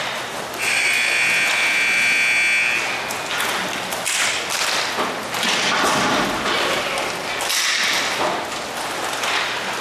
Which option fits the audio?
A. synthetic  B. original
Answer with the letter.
B